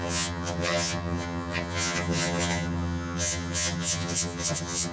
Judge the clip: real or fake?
fake